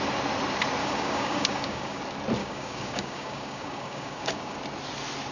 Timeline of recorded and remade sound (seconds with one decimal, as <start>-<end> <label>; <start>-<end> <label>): 0.0-0.8 recorded; 0.8-2.0 remade; 2.0-2.4 recorded; 2.4-4.6 remade; 4.6-5.3 recorded

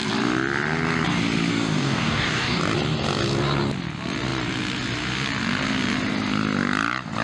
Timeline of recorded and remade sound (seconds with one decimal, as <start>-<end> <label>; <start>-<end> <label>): 0.0-1.5 recorded; 1.5-2.6 remade; 2.6-7.2 recorded